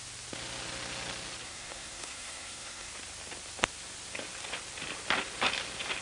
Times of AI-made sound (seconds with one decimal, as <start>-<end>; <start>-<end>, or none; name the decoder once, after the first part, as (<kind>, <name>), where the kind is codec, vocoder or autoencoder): 1.4-2.9 (codec, SNAC)